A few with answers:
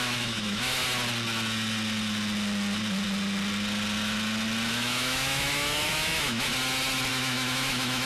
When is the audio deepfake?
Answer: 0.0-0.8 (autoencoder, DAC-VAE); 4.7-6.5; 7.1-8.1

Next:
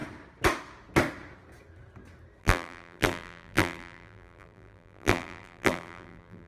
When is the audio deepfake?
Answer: 2.4-6.5 (vocoder, BigVGAN v2)

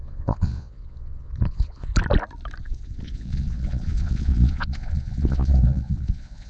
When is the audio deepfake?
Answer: 0.0-1.9 (vocoder, Vocos); 2.6-6.5